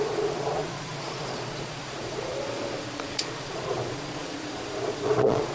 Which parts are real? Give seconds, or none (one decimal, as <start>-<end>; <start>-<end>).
none

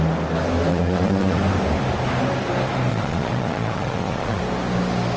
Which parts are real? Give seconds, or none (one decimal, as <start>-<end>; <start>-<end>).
0.0-0.7; 1.4-2.9; 4.4-5.2